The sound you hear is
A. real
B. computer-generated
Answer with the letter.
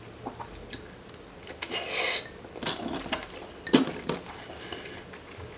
A